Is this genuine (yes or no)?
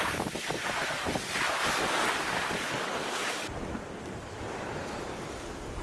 yes